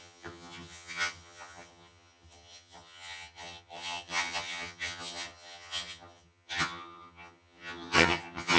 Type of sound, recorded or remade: remade